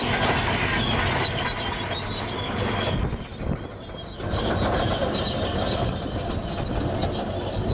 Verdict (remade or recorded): recorded